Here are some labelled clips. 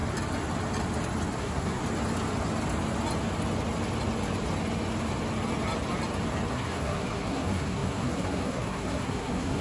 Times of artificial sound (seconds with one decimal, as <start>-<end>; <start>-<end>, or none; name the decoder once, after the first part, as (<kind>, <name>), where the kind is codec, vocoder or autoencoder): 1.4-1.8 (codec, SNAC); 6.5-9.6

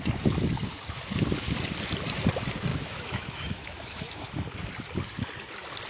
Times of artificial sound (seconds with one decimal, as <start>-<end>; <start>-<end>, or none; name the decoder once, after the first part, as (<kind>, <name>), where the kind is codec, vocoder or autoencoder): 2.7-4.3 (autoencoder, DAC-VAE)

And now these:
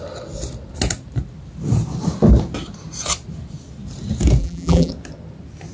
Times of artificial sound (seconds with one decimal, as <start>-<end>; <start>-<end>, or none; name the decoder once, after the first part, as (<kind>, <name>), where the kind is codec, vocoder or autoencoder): 4.4-4.9 (vocoder, BigVGAN v2)